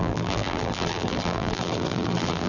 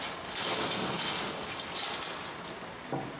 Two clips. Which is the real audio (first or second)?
second